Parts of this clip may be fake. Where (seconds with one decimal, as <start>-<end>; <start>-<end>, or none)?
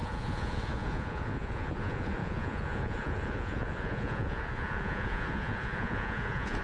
0.0-6.6